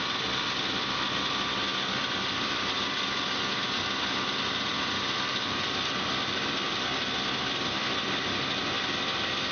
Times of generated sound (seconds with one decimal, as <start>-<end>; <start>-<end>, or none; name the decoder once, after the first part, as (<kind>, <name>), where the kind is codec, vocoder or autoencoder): none